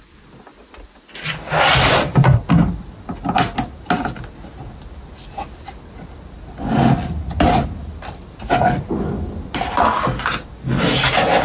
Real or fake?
real